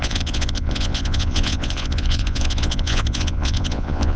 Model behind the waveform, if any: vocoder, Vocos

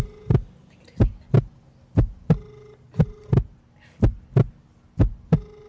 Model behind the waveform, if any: none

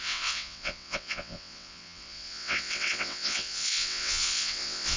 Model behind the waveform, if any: vocoder, WaveNeXt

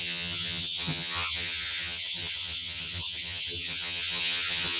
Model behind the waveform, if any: vocoder, HiFi-GAN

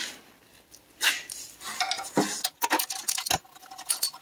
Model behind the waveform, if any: none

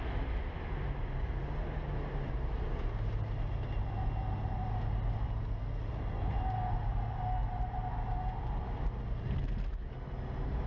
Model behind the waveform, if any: none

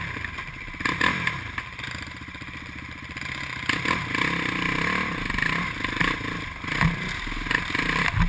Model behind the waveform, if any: none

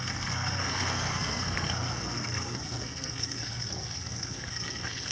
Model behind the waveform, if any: codec, SNAC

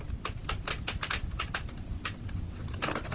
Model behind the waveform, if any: none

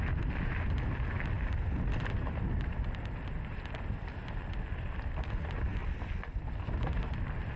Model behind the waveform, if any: none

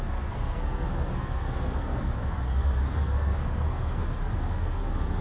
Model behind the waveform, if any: codec, SNAC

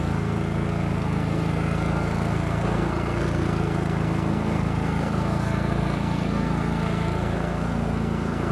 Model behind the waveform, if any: codec, SNAC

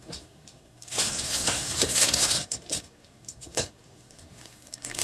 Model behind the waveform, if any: codec, SNAC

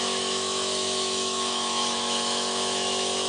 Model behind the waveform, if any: autoencoder, DAC-VAE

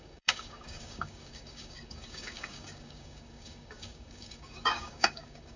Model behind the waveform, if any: codec, DAC